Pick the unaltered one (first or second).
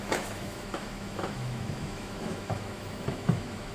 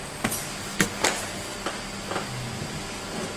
second